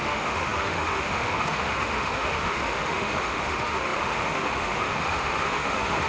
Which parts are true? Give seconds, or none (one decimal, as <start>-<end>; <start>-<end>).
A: none